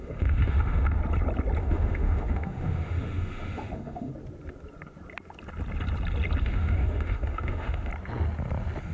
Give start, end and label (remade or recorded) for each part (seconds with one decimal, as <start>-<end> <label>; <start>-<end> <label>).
0.0-1.0 remade; 1.0-1.6 recorded; 1.6-4.1 remade; 4.1-6.4 recorded; 6.4-7.9 remade; 7.9-8.9 recorded